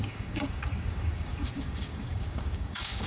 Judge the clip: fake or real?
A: fake